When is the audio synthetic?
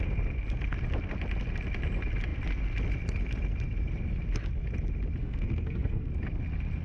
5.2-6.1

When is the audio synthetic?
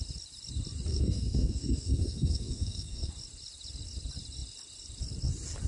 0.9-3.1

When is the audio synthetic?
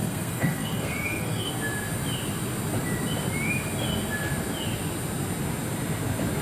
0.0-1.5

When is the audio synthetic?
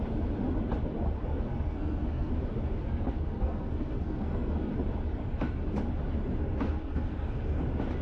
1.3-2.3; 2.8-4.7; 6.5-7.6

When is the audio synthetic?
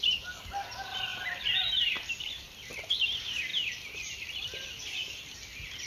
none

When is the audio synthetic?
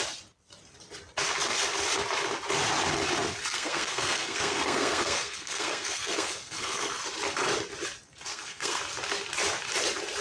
3.4-7.0; 8.3-8.8